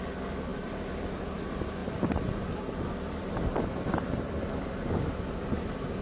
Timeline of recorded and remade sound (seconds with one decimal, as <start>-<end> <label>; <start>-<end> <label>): 0.0-0.5 recorded; 0.5-1.2 remade; 1.2-1.8 recorded; 1.8-4.7 remade; 4.7-6.0 recorded